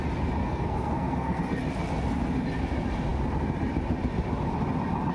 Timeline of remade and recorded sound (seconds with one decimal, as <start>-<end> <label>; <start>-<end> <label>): 0.0-0.4 recorded; 0.4-1.4 remade; 1.4-5.1 recorded